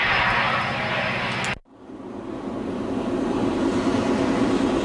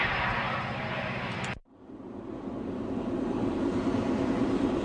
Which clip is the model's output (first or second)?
second